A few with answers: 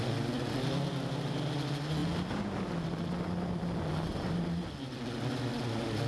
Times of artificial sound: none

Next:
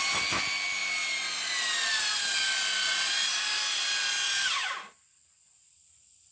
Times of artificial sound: none

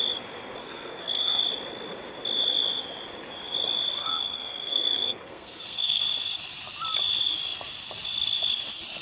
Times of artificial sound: 0.6-1.4; 4.0-6.0